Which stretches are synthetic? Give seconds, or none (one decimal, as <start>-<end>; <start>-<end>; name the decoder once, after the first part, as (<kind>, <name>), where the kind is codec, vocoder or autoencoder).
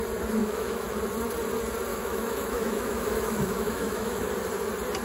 0.4-1.0 (autoencoder, DAC-VAE); 1.9-4.2